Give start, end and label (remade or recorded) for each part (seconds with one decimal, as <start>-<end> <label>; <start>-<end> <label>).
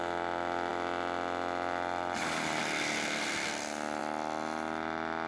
0.0-5.3 recorded